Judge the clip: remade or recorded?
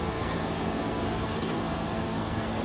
remade